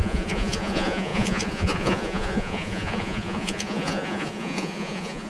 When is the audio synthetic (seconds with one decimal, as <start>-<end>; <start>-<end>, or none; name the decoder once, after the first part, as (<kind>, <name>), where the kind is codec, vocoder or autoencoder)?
0.0-5.3 (vocoder, Vocos)